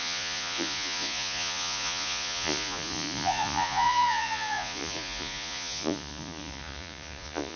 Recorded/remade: remade